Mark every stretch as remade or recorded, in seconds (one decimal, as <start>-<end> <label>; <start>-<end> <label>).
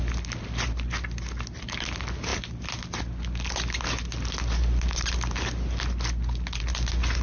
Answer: 0.0-7.2 recorded